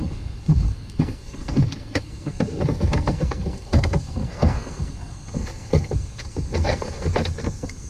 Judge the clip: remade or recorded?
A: remade